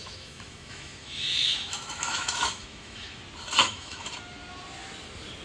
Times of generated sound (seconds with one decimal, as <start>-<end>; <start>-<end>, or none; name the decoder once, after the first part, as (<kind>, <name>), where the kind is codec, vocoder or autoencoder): 0.0-3.2 (autoencoder, DAC-VAE); 3.6-4.1